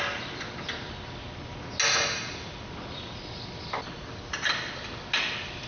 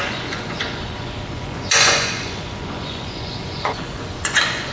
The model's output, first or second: second